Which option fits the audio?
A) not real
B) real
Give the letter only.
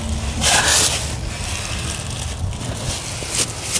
B